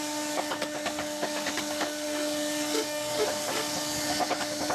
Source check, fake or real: fake